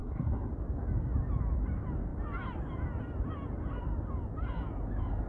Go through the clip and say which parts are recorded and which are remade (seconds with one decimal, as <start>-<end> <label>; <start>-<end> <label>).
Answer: 0.0-0.5 remade; 0.5-5.3 recorded